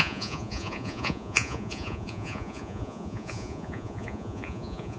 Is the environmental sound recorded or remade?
remade